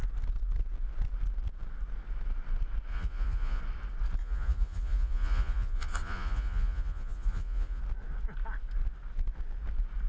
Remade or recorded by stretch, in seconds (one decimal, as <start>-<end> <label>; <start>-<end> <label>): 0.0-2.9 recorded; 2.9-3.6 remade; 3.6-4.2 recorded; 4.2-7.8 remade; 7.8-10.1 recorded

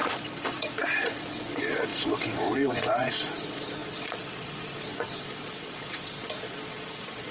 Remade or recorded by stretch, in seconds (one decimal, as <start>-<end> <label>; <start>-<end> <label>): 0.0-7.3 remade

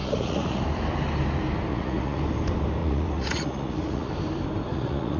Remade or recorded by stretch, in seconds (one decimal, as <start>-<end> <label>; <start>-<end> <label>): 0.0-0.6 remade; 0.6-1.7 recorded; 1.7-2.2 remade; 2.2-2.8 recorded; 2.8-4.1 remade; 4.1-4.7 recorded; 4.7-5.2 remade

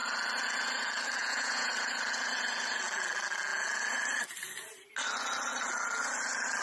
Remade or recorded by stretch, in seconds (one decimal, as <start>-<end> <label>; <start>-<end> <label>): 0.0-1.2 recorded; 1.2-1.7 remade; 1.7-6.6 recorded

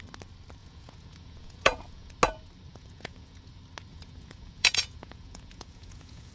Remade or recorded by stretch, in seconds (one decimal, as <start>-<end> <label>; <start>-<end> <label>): 0.0-0.6 recorded; 0.6-2.1 remade; 2.1-2.7 recorded; 2.7-3.5 remade; 3.5-3.9 recorded; 3.9-6.3 remade

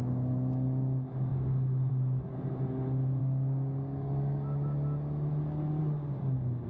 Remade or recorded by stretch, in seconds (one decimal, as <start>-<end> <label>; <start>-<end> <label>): 0.0-6.7 recorded

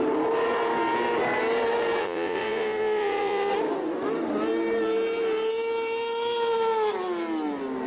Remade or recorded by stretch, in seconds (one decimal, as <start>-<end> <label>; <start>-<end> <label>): 0.0-2.0 recorded; 2.0-3.5 remade; 3.5-7.9 recorded